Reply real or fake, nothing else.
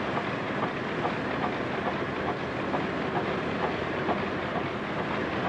real